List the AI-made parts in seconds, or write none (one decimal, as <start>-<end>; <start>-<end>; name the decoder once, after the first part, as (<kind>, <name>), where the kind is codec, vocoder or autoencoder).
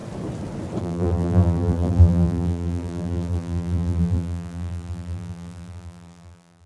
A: 0.8-6.7 (vocoder, BigVGAN v2)